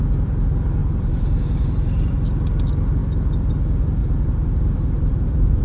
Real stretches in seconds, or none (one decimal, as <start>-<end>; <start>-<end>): 0.0-0.8; 2.1-4.0